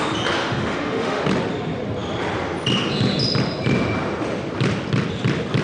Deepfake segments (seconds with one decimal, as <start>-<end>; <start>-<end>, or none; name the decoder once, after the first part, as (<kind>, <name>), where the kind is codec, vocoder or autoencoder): 0.4-1.2 (autoencoder, DAC-VAE)